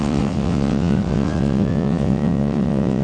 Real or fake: fake